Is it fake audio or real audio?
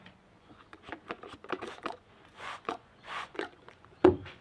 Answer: fake